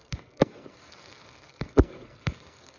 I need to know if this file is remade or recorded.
remade